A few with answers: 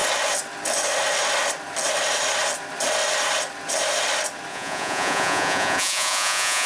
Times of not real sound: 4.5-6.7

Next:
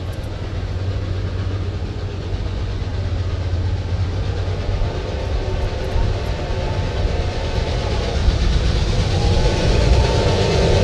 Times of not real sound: 0.0-2.9; 6.4-8.2; 9.1-10.8

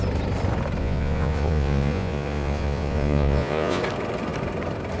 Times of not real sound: 0.8-3.8

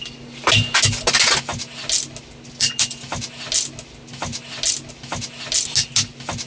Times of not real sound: none